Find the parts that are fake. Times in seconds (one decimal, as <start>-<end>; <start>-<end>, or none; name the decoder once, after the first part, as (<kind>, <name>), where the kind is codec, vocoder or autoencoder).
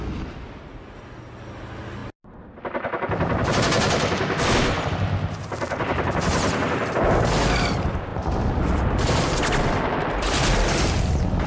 none